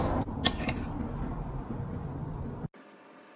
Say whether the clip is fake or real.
real